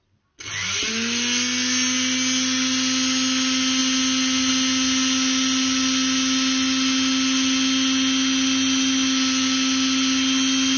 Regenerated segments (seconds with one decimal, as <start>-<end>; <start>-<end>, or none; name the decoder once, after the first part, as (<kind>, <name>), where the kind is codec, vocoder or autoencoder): none